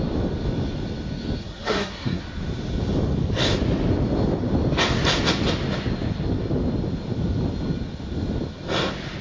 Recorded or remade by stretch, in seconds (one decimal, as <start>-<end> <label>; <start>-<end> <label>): 0.0-1.4 recorded; 1.4-2.2 remade; 2.2-9.2 recorded

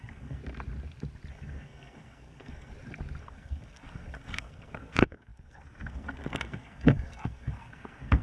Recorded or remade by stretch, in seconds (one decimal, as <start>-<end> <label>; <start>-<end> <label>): 0.0-0.4 remade; 0.4-1.3 recorded; 1.3-2.7 remade; 2.7-3.2 recorded; 3.2-8.2 remade